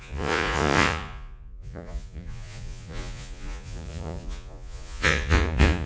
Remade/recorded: remade